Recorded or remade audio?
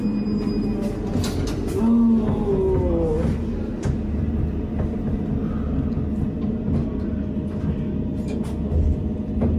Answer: recorded